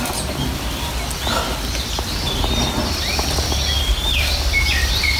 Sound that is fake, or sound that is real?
real